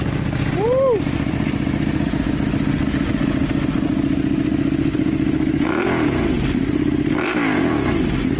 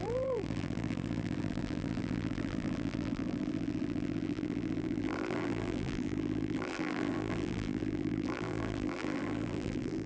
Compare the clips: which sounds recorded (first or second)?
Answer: first